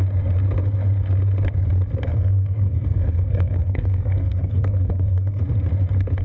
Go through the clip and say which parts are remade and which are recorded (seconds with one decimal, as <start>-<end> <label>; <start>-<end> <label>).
0.0-2.1 recorded; 2.1-5.4 remade; 5.4-6.2 recorded